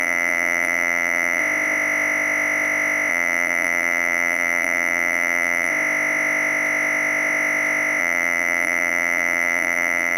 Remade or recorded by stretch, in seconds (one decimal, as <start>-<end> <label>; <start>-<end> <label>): 0.0-1.4 remade; 1.4-3.1 recorded; 3.1-5.7 remade; 5.7-8.0 recorded; 8.0-10.2 remade